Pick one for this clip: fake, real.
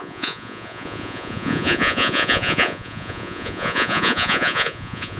fake